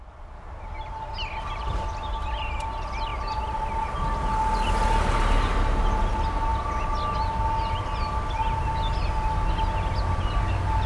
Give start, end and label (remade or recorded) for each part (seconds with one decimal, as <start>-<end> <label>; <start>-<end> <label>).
0.0-10.9 recorded